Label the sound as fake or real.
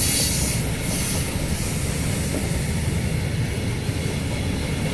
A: real